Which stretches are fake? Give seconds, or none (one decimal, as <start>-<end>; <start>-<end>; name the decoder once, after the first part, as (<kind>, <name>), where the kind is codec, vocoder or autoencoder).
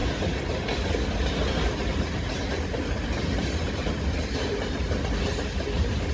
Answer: none